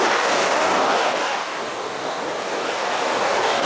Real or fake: fake